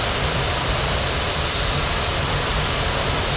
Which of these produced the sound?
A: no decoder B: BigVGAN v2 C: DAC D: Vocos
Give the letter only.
B